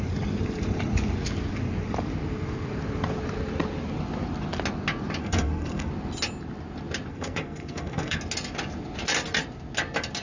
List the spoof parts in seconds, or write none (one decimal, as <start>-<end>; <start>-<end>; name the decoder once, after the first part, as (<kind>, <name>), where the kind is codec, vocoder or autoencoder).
5.2-5.9 (codec, SNAC); 7.1-8.2